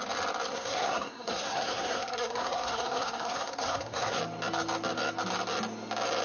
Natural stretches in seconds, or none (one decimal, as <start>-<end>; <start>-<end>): 0.0-0.5; 4.2-6.2